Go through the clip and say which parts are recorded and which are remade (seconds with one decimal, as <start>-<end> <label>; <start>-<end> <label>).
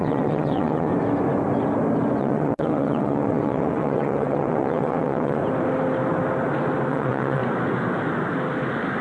0.0-0.9 remade; 0.9-2.2 recorded; 2.2-5.4 remade; 5.4-6.9 recorded; 6.9-7.4 remade; 7.4-9.0 recorded